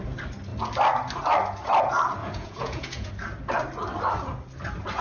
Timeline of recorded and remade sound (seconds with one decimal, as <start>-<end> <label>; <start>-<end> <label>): 0.0-2.2 recorded; 2.2-3.1 remade; 3.1-5.0 recorded